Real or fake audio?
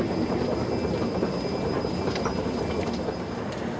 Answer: real